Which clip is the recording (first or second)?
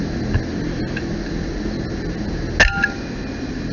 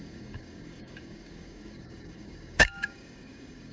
first